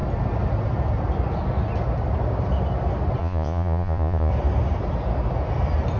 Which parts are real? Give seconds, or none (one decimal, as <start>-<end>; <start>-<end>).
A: 0.0-3.2; 4.3-6.0